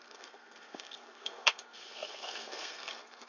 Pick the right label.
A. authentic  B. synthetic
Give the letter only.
B